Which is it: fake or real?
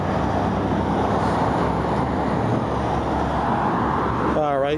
real